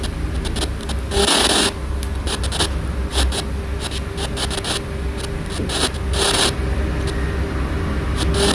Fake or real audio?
real